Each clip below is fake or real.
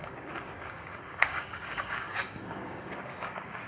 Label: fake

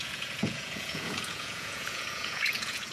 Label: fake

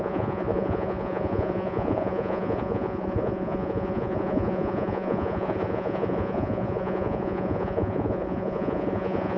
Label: fake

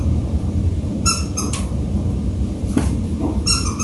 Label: fake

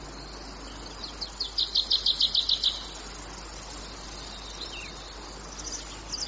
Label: real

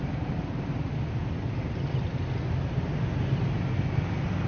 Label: real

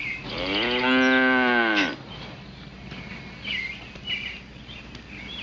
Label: real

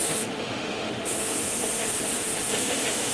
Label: fake